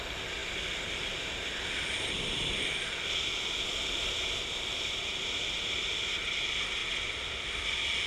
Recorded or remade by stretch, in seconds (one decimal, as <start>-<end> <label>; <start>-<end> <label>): 0.0-8.1 recorded

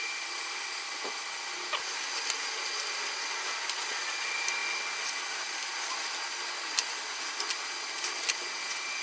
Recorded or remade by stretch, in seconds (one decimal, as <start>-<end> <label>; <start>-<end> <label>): 0.0-9.0 recorded